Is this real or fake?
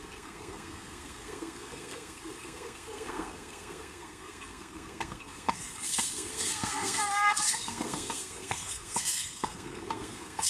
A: fake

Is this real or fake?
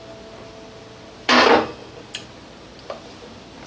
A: real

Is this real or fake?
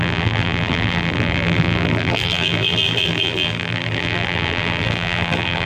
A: fake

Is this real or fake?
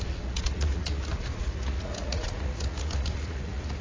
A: fake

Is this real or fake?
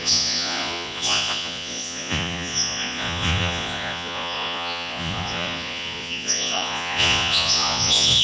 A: fake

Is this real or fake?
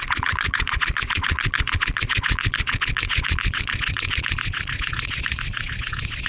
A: fake